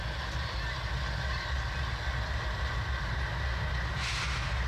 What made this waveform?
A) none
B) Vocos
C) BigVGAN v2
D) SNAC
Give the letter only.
A